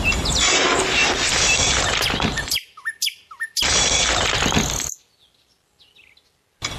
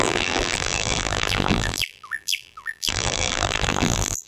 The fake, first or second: second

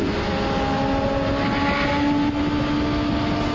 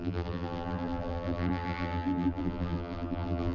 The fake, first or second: second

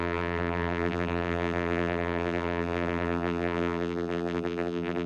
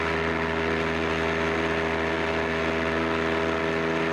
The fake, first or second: first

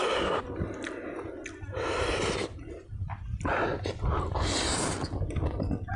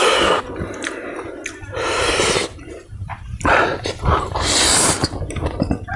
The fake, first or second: second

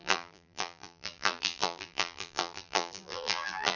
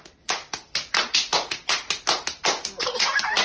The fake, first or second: first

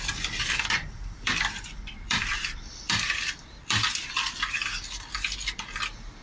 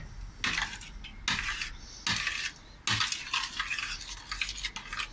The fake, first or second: first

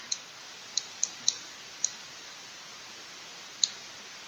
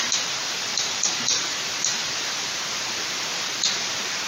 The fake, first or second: second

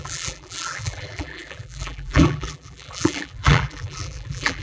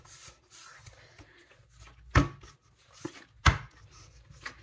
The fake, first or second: first